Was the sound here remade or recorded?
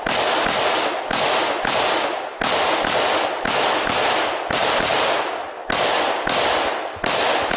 recorded